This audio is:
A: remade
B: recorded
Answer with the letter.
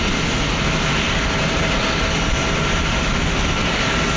B